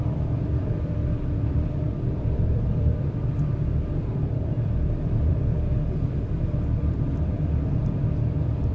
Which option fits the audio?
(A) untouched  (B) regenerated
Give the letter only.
B